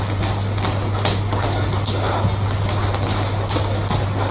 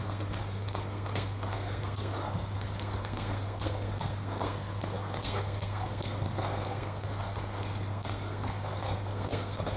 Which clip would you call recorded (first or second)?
first